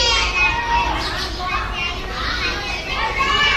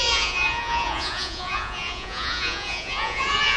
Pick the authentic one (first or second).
first